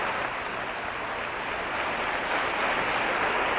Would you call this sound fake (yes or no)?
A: no